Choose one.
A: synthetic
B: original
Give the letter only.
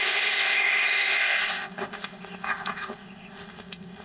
A